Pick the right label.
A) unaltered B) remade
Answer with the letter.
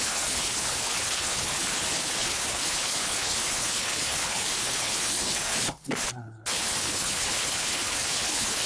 B